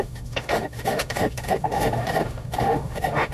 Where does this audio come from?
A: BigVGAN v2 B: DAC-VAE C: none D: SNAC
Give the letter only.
B